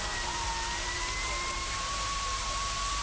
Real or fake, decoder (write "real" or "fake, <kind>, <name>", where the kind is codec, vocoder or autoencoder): fake, vocoder, BigVGAN v2